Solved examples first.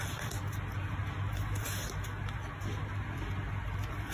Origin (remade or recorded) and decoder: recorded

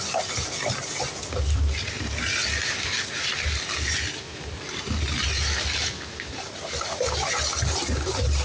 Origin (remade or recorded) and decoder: recorded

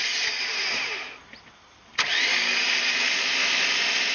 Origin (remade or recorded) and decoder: recorded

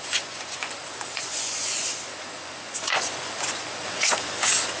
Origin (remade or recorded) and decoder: remade, vocoder, Vocos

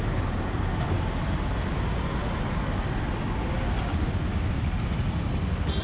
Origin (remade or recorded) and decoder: recorded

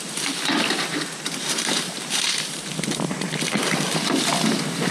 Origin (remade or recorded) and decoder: recorded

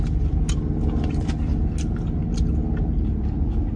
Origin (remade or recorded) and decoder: recorded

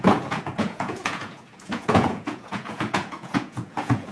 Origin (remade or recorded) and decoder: remade, vocoder, Vocos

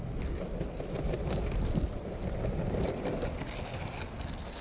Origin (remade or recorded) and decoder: recorded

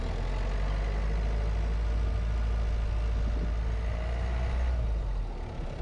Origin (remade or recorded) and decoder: recorded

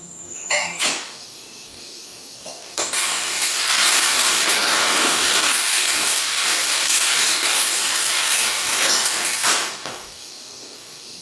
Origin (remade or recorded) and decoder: remade, codec, DAC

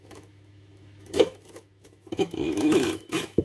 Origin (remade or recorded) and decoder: remade, autoencoder, DAC-VAE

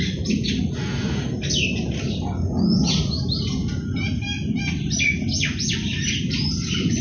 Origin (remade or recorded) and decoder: recorded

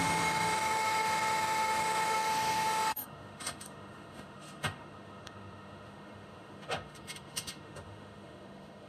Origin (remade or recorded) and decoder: remade, autoencoder, DAC-VAE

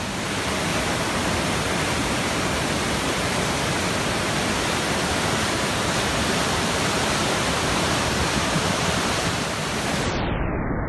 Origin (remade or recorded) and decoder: remade, vocoder, BigVGAN v2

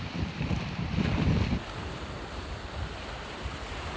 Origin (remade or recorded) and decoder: recorded